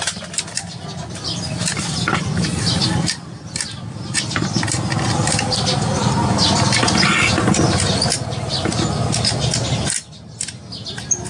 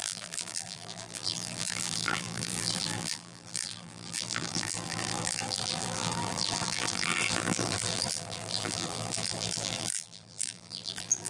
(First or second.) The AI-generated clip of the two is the second